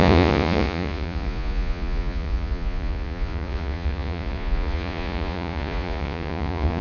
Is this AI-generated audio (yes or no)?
yes